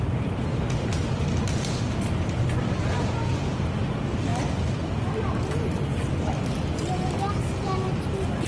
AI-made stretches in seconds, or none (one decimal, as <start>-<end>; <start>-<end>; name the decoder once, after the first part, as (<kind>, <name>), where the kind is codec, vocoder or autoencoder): 3.3-3.8 (vocoder, BigVGAN v2); 4.3-6.1